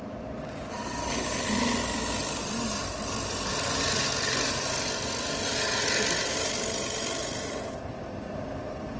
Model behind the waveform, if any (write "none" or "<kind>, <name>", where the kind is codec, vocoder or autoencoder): none